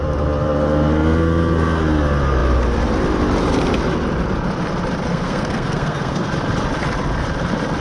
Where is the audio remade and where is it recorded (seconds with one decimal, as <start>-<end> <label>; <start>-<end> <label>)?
0.0-5.1 recorded; 5.1-6.3 remade; 6.3-7.8 recorded

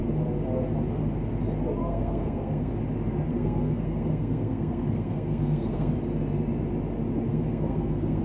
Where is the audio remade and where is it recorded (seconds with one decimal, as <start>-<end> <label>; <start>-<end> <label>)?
0.0-1.8 recorded; 1.8-2.7 remade; 2.7-3.3 recorded; 3.3-5.9 remade; 5.9-7.3 recorded; 7.3-8.2 remade

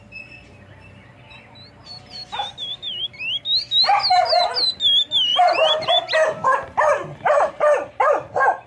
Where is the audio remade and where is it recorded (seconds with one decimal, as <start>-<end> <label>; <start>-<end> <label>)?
0.0-1.8 recorded; 1.8-3.1 remade; 3.1-5.3 recorded; 5.3-5.9 remade; 5.9-8.7 recorded

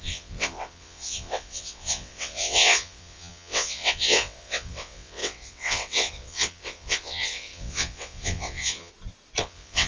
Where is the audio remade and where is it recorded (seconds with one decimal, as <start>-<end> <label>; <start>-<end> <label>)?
0.0-8.9 remade; 8.9-9.4 recorded; 9.4-9.9 remade

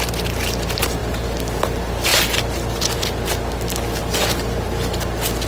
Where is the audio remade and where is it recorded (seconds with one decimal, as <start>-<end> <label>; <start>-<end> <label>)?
0.0-5.5 recorded

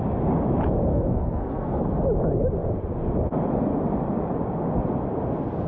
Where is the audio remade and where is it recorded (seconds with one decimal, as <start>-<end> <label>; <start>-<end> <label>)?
0.0-0.9 recorded; 0.9-1.8 remade; 1.8-5.7 recorded

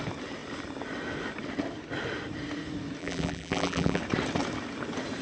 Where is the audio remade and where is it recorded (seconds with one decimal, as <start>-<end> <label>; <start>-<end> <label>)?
0.0-3.0 recorded; 3.0-4.0 remade; 4.0-5.2 recorded

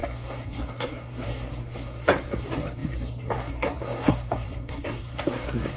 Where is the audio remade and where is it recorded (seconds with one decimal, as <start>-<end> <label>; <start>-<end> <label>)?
0.0-5.8 remade